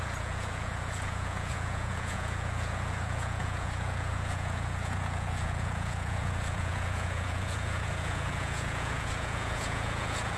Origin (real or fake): fake